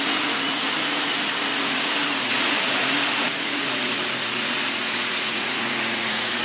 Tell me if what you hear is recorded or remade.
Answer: remade